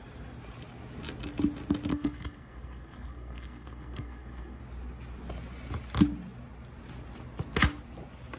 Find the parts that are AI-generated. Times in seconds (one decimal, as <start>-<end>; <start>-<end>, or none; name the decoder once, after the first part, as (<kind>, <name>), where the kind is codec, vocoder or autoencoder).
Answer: 1.9-4.6 (codec, SNAC)